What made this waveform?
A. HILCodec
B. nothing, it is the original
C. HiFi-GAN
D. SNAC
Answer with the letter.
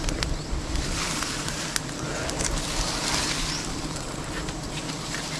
B